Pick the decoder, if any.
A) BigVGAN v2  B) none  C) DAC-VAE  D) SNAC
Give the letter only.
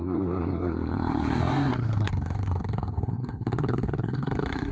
D